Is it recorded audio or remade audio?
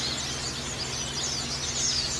recorded